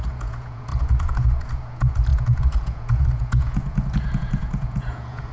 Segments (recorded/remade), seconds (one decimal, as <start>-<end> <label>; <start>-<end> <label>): 0.0-5.3 remade